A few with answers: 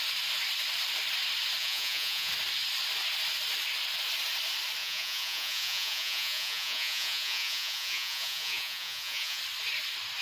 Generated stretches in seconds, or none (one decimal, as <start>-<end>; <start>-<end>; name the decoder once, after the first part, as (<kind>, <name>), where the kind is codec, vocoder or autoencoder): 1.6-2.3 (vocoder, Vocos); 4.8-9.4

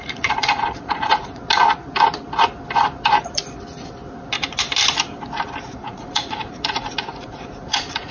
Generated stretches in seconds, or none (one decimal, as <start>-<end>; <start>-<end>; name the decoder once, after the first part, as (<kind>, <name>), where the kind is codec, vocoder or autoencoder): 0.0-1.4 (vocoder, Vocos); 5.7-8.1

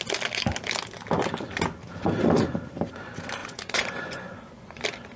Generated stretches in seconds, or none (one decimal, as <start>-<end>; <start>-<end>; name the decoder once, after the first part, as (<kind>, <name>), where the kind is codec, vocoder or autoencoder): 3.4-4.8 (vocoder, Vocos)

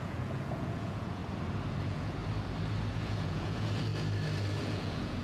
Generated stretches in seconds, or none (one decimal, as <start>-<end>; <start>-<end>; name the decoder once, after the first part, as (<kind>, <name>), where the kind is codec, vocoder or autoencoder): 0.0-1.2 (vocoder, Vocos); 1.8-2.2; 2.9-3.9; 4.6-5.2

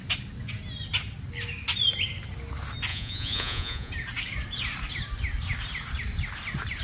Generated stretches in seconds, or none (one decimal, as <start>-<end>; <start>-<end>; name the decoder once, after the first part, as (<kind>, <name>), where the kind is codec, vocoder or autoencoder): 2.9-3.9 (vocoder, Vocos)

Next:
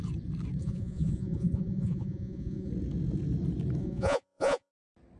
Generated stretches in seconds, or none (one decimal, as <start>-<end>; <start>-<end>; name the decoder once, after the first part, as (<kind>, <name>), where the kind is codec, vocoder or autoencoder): 0.6-2.7 (vocoder, Vocos); 3.8-4.7

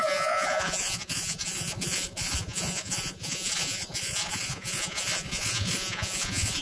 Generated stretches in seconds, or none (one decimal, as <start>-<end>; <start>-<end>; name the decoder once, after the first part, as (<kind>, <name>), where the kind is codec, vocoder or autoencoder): 0.0-6.6 (vocoder, Vocos)